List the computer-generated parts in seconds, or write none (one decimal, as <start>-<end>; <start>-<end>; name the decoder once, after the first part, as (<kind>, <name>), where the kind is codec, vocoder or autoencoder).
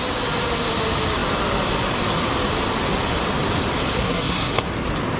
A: 3.9-4.7 (codec, SNAC)